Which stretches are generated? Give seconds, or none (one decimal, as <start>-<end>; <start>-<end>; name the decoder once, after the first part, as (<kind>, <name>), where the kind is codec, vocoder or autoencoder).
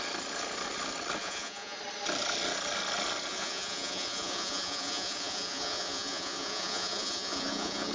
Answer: 1.2-1.8 (vocoder, Vocos); 3.3-7.9